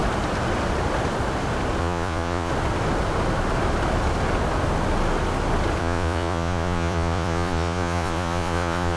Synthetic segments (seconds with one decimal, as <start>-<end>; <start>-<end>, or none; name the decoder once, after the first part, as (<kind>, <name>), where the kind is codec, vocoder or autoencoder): 1.8-2.5 (vocoder, Vocos); 5.8-9.0